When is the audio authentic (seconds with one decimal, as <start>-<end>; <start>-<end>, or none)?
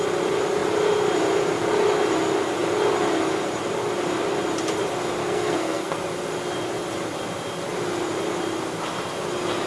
0.0-5.2; 6.0-9.7